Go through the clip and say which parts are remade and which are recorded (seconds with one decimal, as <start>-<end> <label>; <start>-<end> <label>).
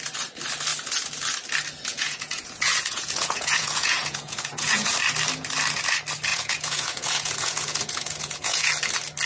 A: 0.0-1.9 recorded; 1.9-4.9 remade; 4.9-6.3 recorded; 6.3-8.7 remade; 8.7-9.3 recorded